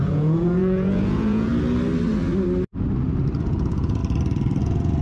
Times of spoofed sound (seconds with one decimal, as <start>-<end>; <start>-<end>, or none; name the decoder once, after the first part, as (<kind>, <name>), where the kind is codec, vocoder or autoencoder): 0.0-1.5 (vocoder, Vocos); 3.4-4.0; 4.6-5.0